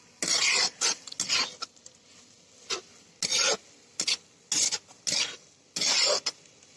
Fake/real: real